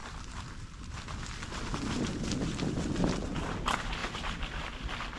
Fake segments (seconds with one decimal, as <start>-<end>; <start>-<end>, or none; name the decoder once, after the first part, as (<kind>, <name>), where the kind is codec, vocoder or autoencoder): none